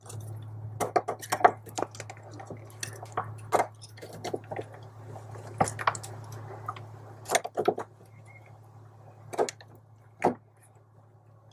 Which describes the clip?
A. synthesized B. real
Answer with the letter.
B